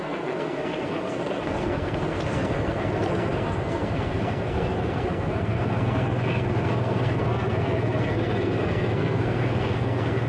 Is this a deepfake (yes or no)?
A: yes